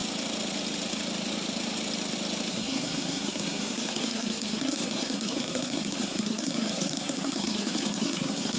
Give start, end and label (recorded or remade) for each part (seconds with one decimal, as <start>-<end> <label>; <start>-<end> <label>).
0.0-2.5 recorded; 2.5-8.6 remade